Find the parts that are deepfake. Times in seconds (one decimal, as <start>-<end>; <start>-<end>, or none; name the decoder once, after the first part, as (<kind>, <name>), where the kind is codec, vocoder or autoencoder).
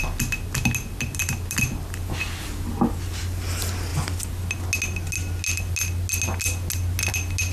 none